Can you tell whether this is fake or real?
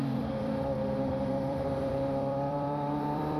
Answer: fake